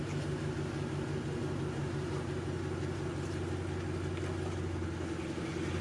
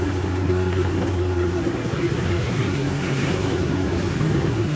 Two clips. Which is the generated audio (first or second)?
second